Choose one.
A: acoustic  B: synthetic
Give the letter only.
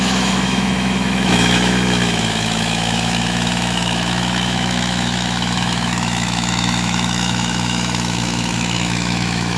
B